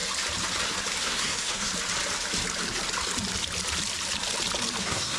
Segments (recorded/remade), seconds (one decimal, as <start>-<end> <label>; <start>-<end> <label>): 0.0-1.0 recorded; 1.0-1.7 remade; 1.7-4.8 recorded; 4.8-5.2 remade